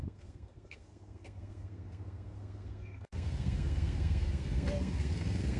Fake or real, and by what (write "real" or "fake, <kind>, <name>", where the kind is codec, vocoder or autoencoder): fake, codec, SNAC